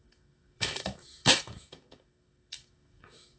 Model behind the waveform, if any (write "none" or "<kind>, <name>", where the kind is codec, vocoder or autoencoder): autoencoder, DAC-VAE